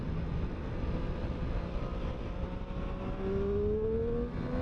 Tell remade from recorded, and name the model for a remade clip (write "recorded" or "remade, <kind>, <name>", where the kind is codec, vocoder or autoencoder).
recorded